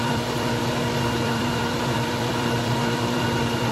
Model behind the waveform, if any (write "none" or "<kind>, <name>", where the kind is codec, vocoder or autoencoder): vocoder, BigVGAN v2